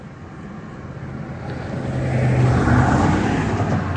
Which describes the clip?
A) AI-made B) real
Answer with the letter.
B